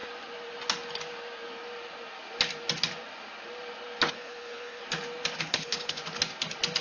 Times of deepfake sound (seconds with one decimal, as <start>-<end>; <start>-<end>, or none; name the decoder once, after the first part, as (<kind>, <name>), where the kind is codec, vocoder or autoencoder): 4.1-4.8 (codec, HILCodec); 5.4-6.0